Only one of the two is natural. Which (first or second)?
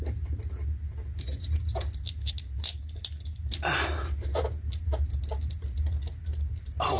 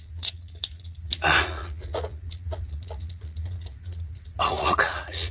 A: first